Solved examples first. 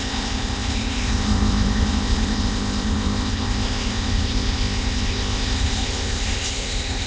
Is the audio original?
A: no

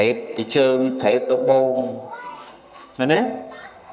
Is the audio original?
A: no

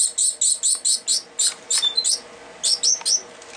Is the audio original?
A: yes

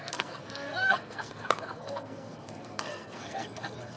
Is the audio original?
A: no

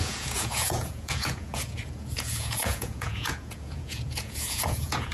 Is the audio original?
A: no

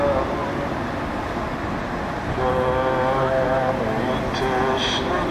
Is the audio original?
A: yes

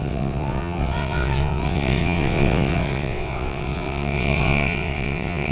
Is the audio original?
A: no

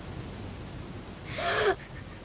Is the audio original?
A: yes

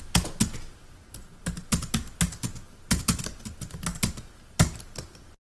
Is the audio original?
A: yes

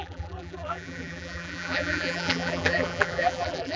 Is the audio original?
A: no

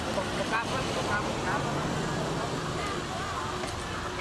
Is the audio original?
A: yes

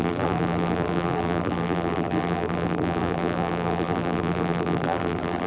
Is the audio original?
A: no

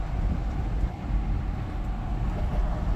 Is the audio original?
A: yes